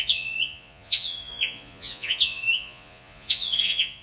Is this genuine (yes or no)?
no